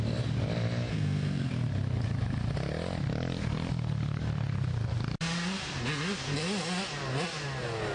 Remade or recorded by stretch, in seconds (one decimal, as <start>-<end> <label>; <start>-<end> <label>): 0.0-0.9 recorded; 0.9-1.5 remade; 1.5-7.9 recorded